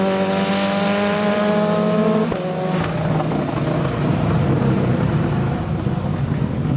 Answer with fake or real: real